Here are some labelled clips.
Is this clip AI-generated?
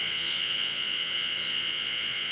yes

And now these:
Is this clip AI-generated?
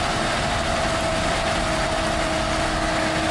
no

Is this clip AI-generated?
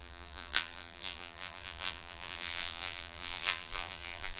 yes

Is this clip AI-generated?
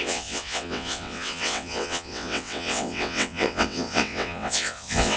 yes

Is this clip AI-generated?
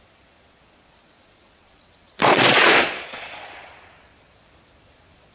yes